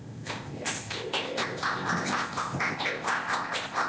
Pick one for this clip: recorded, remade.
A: remade